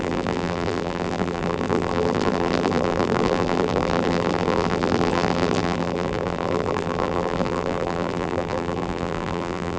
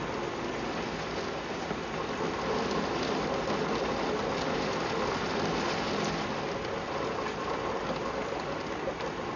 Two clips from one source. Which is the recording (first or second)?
second